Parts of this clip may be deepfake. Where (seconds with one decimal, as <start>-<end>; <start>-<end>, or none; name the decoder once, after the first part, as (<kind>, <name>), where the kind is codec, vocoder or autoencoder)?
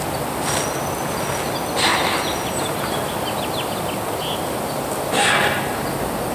1.9-5.3 (vocoder, BigVGAN v2)